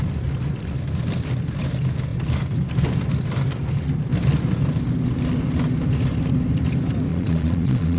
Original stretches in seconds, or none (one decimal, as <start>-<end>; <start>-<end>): 0.0-7.1